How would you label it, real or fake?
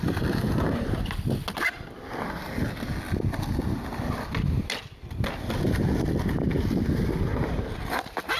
real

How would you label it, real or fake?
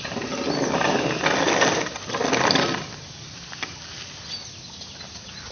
real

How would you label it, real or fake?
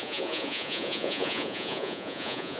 fake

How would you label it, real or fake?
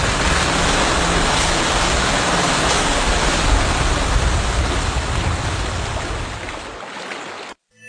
real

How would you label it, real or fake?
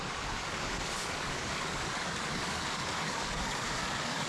fake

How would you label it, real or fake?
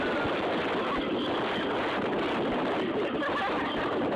real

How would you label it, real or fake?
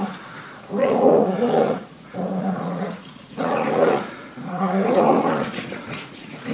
fake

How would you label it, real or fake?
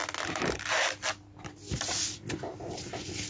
real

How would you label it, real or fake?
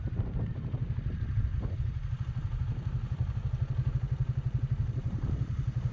fake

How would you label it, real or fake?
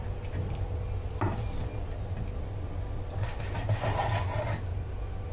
real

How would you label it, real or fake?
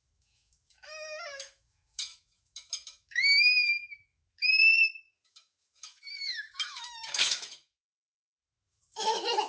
fake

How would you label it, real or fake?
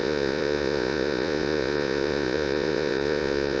fake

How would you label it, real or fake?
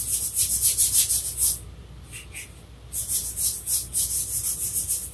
real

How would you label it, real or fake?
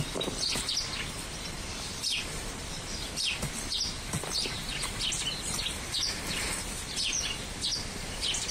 real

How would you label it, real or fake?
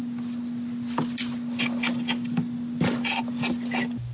real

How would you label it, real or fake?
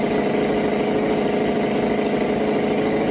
real